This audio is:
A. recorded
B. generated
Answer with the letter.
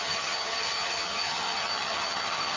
B